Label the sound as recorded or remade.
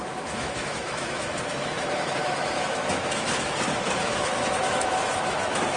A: remade